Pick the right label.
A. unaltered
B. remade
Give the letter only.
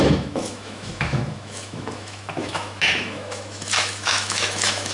B